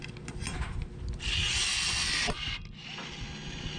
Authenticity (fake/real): real